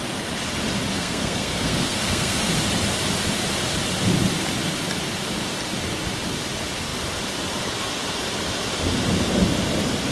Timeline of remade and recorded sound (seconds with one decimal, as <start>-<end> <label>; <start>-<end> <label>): 0.0-0.9 recorded; 0.9-2.5 remade; 2.5-10.1 recorded